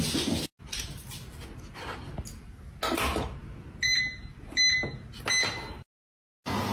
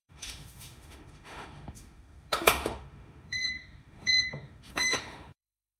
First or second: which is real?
first